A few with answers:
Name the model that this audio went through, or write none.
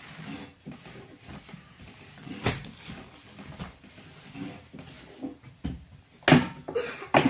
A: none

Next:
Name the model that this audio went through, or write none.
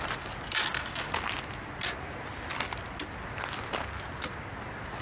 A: none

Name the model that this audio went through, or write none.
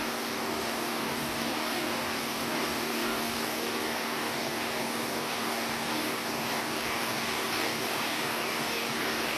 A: codec, DAC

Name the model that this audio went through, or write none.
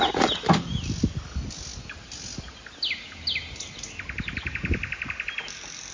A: none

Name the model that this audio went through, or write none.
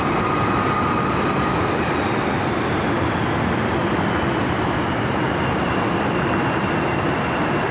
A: none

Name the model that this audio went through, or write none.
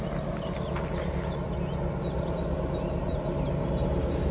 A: none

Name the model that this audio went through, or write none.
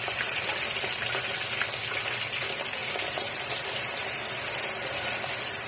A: vocoder, BigVGAN v2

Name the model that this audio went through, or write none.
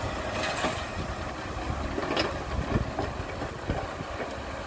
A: none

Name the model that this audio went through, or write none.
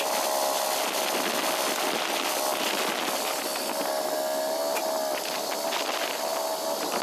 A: none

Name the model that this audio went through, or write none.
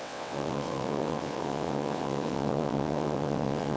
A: vocoder, WaveNeXt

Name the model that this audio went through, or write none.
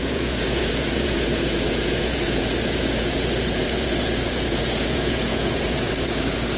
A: vocoder, Vocos